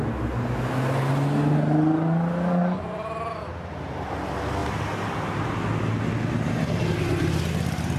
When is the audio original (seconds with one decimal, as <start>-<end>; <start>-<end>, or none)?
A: 0.0-8.0